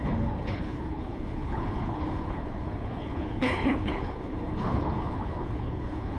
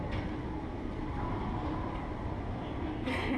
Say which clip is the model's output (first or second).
first